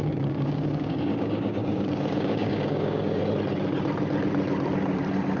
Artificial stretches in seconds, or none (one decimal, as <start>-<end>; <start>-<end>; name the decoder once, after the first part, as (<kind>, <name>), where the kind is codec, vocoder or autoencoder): 0.0-3.2 (codec, DAC)